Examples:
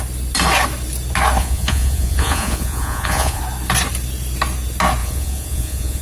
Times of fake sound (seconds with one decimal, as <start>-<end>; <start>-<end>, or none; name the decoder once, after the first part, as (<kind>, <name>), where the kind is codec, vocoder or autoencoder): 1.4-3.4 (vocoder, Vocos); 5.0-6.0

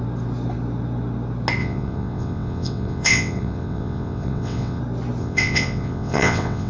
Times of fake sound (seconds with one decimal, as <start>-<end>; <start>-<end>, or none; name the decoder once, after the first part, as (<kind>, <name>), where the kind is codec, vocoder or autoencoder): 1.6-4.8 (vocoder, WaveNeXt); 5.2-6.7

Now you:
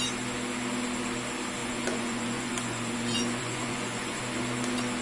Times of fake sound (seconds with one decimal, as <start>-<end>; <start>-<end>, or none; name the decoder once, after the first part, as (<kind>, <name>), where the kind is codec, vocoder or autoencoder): 1.6-4.2 (vocoder, Vocos)

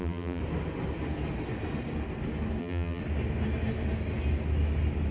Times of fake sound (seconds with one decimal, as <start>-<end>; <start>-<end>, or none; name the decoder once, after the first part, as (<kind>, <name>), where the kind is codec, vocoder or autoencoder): 0.0-0.4 (vocoder, BigVGAN v2); 2.6-3.0

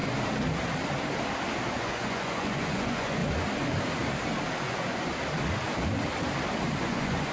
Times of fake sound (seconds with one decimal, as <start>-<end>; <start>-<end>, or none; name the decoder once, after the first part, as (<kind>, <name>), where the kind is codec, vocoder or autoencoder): 1.7-3.2 (vocoder, Vocos); 4.6-5.1; 6.8-7.3

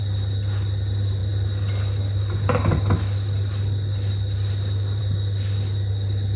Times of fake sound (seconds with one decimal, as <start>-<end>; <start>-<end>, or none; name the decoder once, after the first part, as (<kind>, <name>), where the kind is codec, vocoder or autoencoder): none

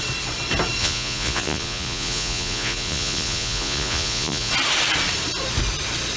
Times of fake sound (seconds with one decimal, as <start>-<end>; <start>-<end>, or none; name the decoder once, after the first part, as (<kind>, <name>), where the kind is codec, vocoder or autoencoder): 0.8-4.5 (vocoder, Vocos)

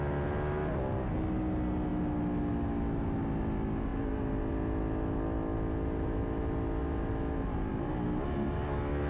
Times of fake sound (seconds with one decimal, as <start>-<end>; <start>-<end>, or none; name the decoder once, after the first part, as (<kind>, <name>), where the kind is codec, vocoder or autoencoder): none